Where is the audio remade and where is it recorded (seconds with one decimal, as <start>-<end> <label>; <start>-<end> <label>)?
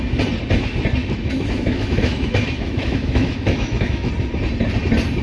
0.0-1.0 recorded; 1.0-4.1 remade; 4.1-5.2 recorded